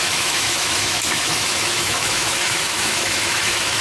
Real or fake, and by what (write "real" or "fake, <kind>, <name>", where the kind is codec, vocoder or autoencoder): fake, autoencoder, DAC-VAE